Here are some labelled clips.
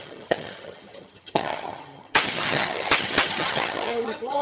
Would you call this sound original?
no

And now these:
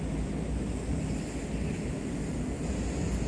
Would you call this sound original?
yes